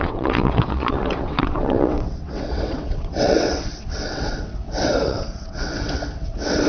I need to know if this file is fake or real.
fake